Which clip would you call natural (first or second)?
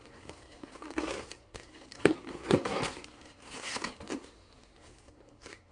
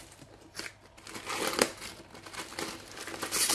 second